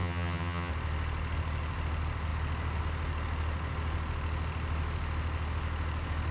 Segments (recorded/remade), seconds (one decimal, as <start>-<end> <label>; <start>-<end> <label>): 0.0-0.7 remade; 0.7-6.3 recorded